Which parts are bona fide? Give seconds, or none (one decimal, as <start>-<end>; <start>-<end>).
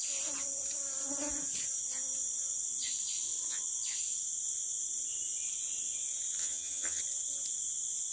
0.0-6.4; 7.0-8.1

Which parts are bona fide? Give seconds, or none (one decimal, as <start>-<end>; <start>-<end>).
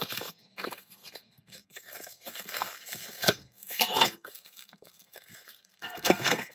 none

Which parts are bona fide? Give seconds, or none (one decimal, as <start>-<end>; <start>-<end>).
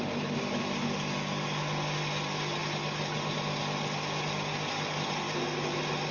0.0-6.1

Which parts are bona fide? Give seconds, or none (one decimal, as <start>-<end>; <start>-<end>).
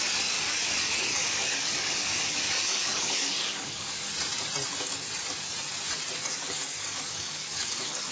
4.1-6.3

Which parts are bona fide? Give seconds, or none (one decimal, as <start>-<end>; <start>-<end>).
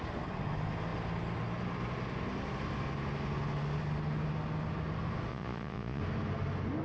0.0-5.3; 6.0-6.8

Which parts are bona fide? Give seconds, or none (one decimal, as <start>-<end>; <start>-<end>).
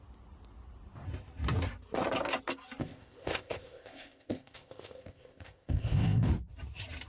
0.0-2.8; 6.3-7.1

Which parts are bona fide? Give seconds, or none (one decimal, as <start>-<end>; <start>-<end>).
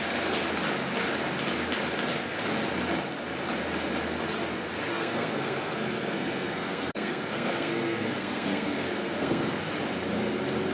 0.0-4.9; 9.6-10.7